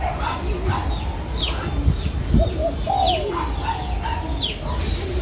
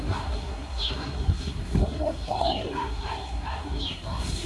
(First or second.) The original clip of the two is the first